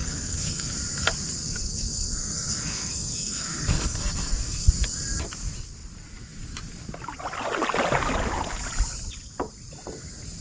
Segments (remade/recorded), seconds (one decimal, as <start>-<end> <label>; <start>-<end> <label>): 0.0-0.7 remade; 0.7-1.4 recorded; 1.4-4.7 remade; 4.7-10.4 recorded